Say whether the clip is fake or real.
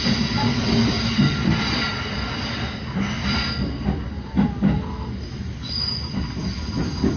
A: real